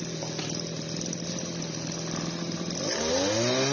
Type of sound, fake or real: real